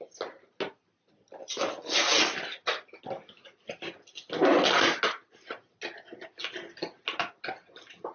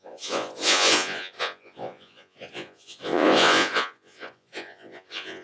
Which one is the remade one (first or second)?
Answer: second